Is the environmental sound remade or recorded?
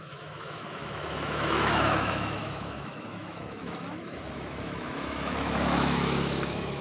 remade